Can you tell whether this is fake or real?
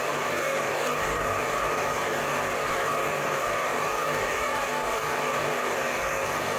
fake